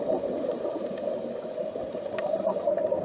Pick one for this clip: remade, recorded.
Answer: recorded